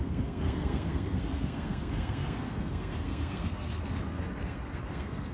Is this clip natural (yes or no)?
no